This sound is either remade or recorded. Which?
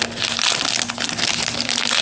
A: recorded